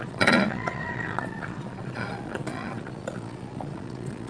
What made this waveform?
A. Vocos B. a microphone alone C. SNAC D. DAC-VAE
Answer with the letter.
A